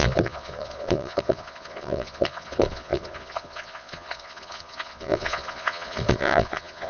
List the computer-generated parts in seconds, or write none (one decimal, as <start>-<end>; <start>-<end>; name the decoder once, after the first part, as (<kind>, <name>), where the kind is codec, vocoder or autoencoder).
0.0-6.9 (vocoder, Vocos)